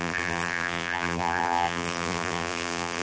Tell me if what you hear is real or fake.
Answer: fake